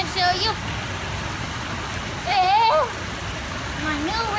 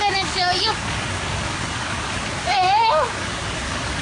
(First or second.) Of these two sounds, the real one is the first